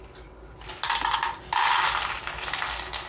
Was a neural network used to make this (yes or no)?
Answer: no